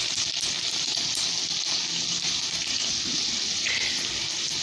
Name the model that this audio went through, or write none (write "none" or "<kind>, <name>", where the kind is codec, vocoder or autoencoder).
none